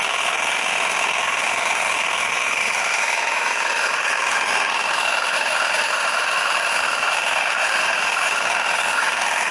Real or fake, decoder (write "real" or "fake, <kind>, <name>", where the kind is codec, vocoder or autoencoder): fake, autoencoder, DAC-VAE